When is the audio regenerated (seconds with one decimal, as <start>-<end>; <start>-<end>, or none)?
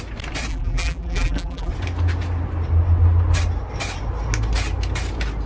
0.5-1.7